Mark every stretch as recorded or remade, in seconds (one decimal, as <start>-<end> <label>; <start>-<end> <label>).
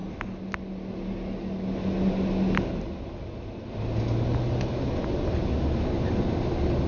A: 0.0-6.9 recorded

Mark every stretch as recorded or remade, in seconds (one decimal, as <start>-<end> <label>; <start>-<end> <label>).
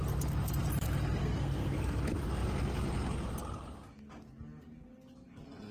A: 0.0-1.2 recorded; 1.2-2.0 remade; 2.0-5.7 recorded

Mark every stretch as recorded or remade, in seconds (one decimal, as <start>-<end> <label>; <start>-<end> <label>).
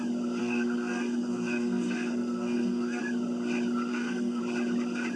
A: 0.0-0.4 recorded; 0.4-3.0 remade; 3.0-3.9 recorded; 3.9-4.4 remade; 4.4-5.2 recorded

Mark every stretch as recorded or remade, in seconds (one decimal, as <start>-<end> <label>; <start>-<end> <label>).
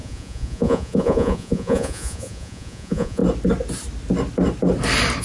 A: 0.0-3.2 remade; 3.2-5.2 recorded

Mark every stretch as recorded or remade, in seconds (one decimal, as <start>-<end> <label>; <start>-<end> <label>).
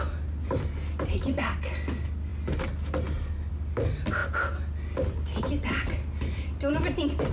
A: 0.0-7.3 recorded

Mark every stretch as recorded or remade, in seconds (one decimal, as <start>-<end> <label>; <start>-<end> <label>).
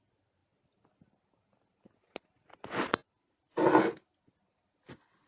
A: 0.0-5.3 recorded